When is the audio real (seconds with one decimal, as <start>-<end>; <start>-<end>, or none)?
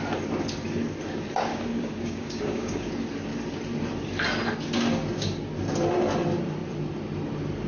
0.0-1.5; 2.9-7.7